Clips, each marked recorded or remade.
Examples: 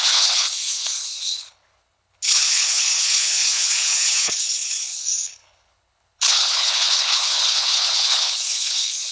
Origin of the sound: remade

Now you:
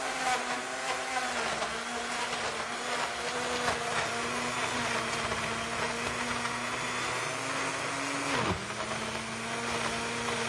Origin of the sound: recorded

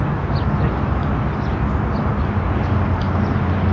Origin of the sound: recorded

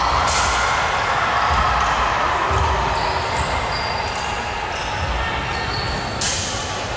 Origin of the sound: recorded